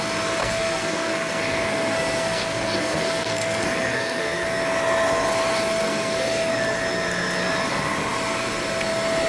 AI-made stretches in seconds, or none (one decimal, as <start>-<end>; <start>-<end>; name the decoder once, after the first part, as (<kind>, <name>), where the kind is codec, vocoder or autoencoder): 0.4-4.6 (codec, SNAC); 5.8-6.5